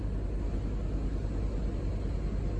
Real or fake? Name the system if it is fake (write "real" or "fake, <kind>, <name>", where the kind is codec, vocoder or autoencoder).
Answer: real